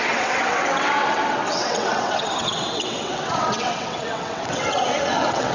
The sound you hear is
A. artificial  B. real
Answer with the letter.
A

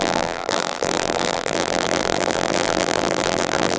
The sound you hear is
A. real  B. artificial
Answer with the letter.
B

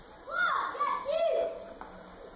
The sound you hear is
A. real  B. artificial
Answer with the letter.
A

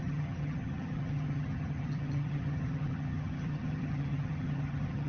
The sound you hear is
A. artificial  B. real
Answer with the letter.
A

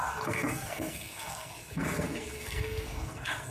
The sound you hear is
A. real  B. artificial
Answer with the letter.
B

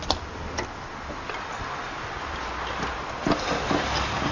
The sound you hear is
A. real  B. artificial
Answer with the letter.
A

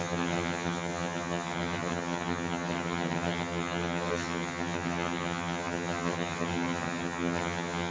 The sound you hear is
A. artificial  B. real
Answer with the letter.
A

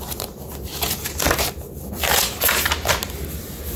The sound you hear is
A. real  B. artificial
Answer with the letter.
A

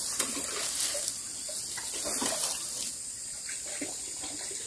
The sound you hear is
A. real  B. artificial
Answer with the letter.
A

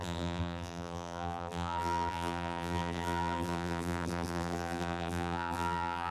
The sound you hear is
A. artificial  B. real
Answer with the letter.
A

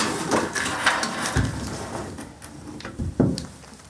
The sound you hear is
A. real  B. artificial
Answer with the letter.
B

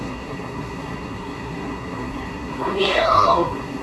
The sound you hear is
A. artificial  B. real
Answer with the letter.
A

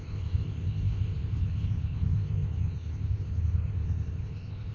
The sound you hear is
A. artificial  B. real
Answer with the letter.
A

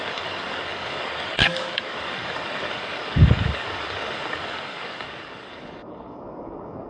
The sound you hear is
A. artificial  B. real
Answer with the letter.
A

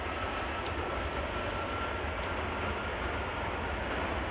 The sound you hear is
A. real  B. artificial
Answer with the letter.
A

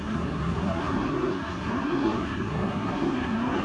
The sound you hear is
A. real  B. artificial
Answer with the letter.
B